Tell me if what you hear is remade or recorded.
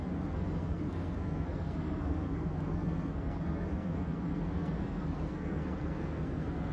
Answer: remade